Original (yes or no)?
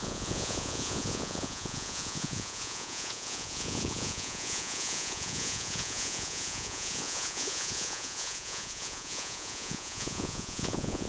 no